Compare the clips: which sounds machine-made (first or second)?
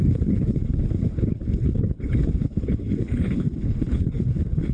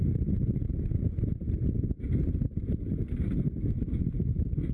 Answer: first